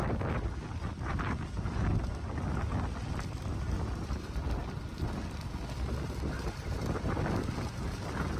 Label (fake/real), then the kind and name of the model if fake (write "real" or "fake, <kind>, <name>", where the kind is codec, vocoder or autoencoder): real